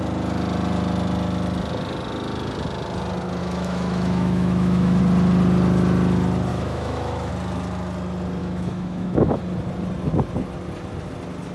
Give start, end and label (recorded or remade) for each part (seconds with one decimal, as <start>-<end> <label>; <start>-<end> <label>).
0.0-3.4 recorded; 3.4-5.0 remade; 5.0-6.5 recorded; 6.5-7.3 remade; 7.3-8.4 recorded; 8.4-9.4 remade; 9.4-11.5 recorded